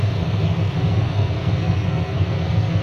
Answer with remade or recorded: remade